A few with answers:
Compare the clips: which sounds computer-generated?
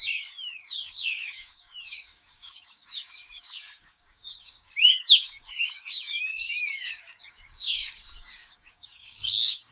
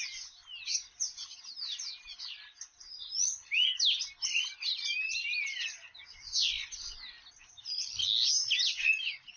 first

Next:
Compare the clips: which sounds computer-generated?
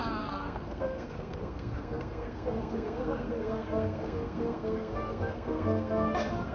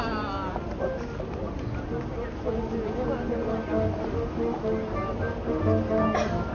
first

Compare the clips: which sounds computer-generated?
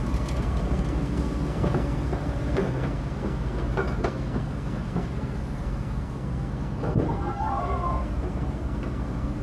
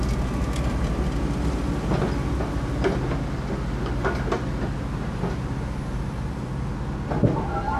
first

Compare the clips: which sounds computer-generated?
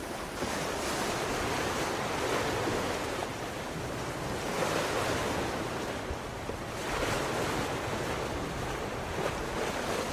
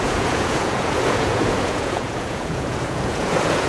second